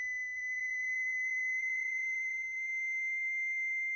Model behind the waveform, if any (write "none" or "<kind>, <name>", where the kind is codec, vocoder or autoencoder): vocoder, BigVGAN v2